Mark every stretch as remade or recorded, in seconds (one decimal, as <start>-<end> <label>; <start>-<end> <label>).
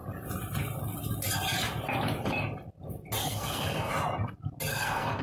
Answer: 0.0-3.2 recorded; 3.2-3.9 remade; 3.9-4.7 recorded; 4.7-5.2 remade